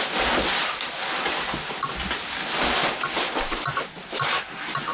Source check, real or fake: real